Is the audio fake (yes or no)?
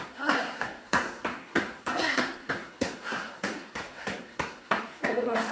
yes